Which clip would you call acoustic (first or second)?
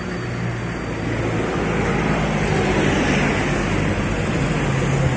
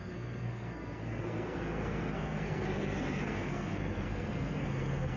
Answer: first